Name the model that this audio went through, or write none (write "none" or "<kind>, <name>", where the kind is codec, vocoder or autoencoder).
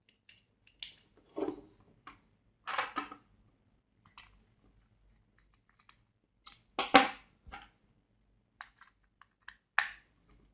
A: none